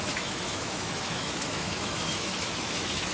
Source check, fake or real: fake